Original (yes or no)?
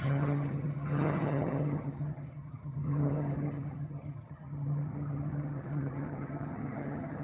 no